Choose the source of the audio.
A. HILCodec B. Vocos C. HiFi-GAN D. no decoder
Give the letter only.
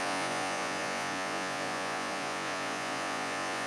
B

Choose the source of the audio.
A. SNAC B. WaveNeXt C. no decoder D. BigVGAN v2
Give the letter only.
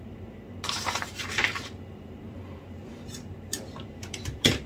D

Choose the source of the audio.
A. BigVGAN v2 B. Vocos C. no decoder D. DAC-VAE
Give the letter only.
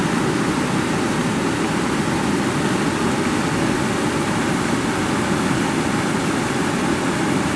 C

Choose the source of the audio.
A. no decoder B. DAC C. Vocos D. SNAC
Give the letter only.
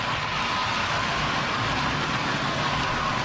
A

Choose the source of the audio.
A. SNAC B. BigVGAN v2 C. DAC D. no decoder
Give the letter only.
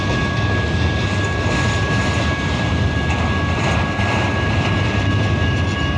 D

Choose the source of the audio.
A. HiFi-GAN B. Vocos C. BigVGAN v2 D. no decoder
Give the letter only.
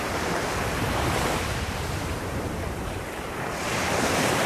C